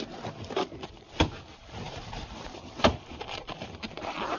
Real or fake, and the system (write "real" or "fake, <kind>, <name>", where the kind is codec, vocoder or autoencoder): real